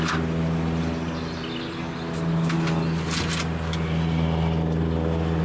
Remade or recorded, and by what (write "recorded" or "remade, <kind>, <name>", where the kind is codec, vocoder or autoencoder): recorded